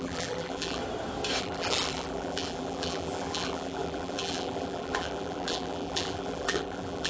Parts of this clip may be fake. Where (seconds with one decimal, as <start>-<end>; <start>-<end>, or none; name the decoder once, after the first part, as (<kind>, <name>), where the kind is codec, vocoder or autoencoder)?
0.0-0.8 (vocoder, BigVGAN v2); 1.4-7.1